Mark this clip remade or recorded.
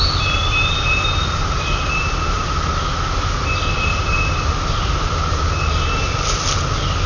recorded